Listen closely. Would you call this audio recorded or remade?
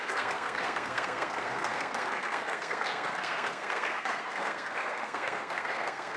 remade